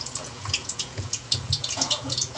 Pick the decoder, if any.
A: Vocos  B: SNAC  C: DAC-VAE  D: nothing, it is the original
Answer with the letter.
A